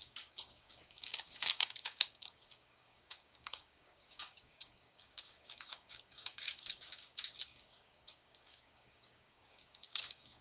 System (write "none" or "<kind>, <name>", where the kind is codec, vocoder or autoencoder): codec, DAC